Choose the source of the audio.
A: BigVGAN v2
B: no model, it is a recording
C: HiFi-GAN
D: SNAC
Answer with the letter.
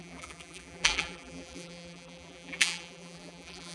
A